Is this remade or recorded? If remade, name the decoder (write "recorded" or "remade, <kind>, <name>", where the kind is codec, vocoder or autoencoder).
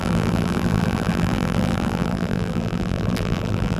remade, vocoder, BigVGAN v2